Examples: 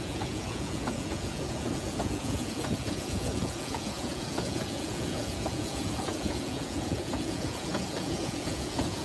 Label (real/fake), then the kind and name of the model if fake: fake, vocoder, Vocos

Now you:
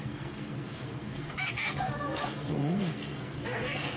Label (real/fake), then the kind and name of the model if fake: fake, codec, SNAC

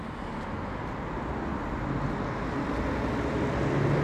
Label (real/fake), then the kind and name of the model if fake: real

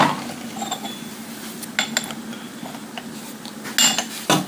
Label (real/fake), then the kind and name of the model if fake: real